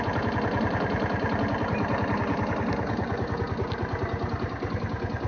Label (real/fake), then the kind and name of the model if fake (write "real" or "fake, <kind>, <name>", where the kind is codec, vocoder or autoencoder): fake, vocoder, BigVGAN v2